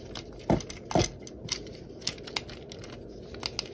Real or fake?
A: real